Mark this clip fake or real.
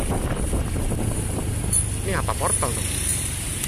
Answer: real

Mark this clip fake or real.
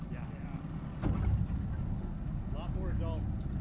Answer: real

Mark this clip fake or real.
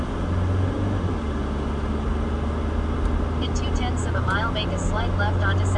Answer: real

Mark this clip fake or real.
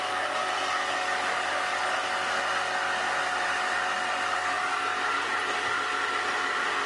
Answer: real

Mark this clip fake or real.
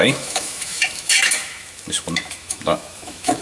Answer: fake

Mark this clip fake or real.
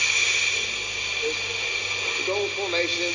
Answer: real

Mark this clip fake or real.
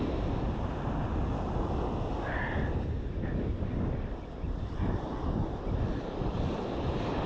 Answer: real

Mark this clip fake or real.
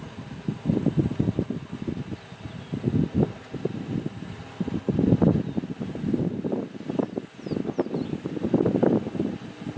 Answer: real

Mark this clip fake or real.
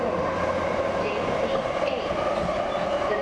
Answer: real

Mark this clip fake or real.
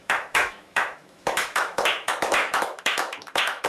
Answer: fake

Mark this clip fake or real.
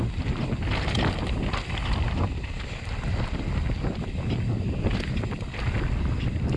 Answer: real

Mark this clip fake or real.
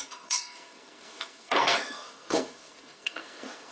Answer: fake